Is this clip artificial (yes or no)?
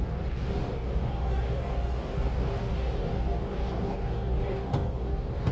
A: yes